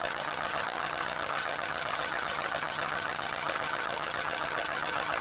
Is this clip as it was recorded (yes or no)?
no